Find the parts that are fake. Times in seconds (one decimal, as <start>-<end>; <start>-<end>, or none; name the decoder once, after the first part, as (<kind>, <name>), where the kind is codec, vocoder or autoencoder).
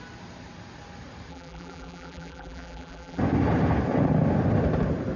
1.3-3.2 (vocoder, BigVGAN v2)